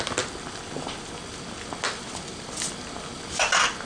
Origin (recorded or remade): recorded